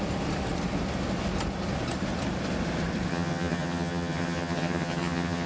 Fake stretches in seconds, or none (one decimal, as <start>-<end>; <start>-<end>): 3.1-5.5